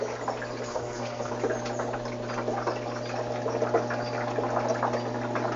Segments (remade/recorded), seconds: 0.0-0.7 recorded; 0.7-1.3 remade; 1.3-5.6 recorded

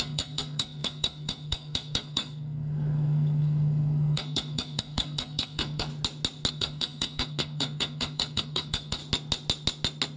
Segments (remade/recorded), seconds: 0.0-5.9 remade; 5.9-6.5 recorded; 6.5-9.0 remade; 9.0-10.2 recorded

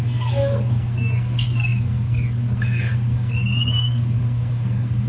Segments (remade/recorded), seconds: 0.0-5.1 remade